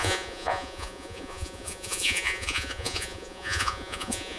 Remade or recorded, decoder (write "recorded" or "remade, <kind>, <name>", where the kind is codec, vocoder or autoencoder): remade, vocoder, Vocos